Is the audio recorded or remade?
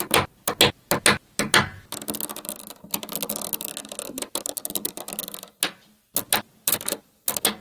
recorded